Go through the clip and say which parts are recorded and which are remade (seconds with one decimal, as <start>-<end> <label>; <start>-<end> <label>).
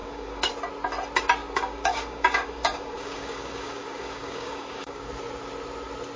0.0-0.5 remade; 0.5-1.4 recorded; 1.4-5.1 remade; 5.1-6.2 recorded